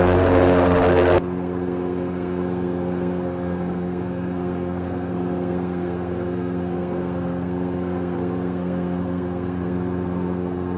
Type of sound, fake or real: fake